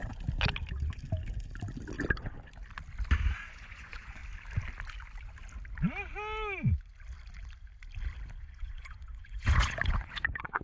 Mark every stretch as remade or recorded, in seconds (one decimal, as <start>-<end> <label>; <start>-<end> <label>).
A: 0.0-3.4 recorded; 3.4-4.2 remade; 4.2-8.4 recorded; 8.4-10.6 remade